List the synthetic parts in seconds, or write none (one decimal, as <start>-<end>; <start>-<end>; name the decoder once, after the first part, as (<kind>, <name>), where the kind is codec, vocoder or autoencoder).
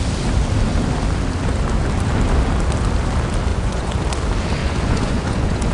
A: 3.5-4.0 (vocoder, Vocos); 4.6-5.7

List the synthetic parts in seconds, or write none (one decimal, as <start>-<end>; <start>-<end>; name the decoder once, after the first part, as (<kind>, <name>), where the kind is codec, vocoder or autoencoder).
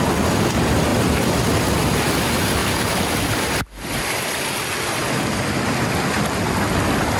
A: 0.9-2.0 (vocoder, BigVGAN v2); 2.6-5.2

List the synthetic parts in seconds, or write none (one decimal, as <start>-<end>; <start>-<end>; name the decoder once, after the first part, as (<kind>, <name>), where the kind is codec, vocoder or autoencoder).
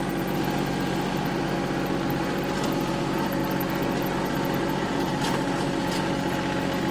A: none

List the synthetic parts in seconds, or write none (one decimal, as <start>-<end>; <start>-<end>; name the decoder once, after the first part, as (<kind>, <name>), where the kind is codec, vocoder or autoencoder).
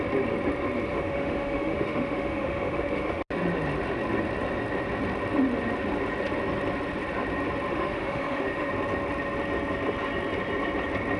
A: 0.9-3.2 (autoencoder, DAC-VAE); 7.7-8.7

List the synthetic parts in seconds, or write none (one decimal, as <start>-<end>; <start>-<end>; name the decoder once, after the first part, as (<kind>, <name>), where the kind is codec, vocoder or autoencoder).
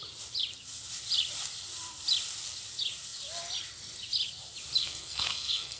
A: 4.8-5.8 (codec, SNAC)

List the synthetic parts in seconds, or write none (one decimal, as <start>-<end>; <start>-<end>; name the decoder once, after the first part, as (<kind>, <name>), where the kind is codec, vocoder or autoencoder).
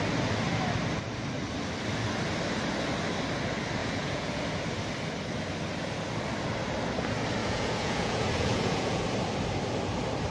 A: 3.8-4.4 (vocoder, Vocos); 7.4-9.0